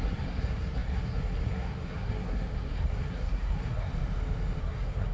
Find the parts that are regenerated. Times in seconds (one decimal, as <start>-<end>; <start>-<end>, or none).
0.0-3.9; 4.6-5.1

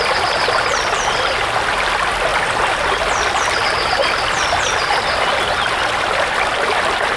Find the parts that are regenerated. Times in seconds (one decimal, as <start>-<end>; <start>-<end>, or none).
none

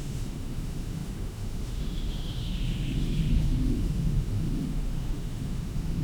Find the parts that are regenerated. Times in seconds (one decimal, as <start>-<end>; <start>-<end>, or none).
0.0-6.0